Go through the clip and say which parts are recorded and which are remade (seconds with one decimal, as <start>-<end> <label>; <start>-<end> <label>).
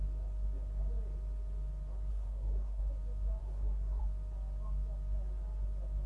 0.0-2.1 recorded; 2.1-2.8 remade; 2.8-3.4 recorded; 3.4-4.0 remade; 4.0-6.1 recorded